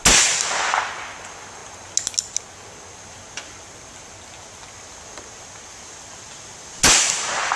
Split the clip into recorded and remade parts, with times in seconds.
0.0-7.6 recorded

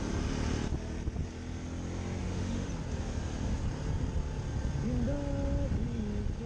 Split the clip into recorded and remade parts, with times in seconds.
0.0-2.2 recorded; 2.2-2.7 remade; 2.7-6.5 recorded

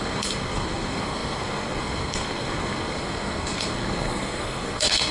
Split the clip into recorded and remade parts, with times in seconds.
0.0-5.1 remade

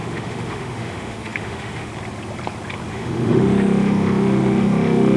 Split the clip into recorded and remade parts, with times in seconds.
0.0-1.9 remade; 1.9-2.9 recorded; 2.9-5.2 remade

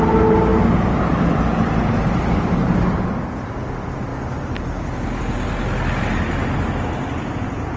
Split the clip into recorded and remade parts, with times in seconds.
0.0-7.8 recorded

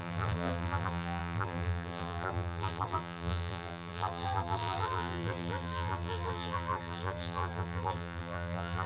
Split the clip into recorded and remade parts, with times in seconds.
0.0-8.9 remade

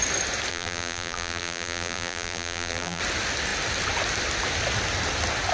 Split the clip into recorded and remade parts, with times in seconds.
0.0-0.5 recorded; 0.5-3.0 remade; 3.0-5.5 recorded